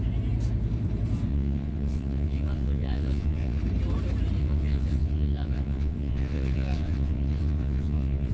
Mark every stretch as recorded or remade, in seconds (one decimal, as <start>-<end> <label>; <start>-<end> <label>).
0.0-1.3 recorded; 1.3-3.6 remade; 3.6-4.4 recorded; 4.4-8.3 remade